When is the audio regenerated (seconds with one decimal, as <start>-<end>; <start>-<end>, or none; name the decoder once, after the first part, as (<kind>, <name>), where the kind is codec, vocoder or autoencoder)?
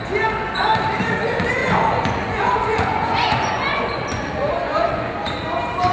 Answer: 1.6-5.1 (vocoder, Vocos)